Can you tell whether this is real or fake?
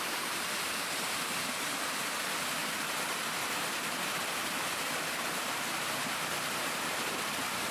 fake